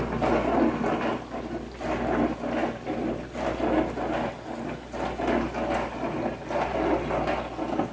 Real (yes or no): yes